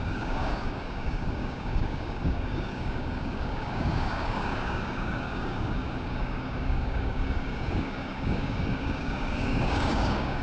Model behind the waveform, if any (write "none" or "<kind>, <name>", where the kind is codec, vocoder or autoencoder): codec, DAC